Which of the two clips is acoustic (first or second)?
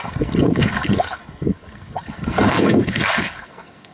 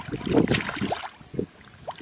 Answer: second